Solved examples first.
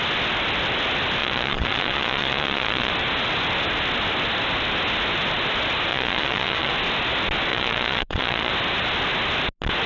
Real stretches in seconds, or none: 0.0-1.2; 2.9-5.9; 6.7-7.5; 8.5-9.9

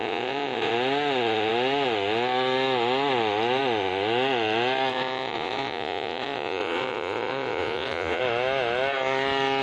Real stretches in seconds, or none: 0.7-4.9; 8.2-9.6

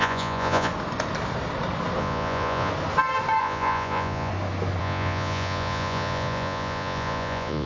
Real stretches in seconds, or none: 0.7-2.0; 2.7-3.4; 4.3-4.8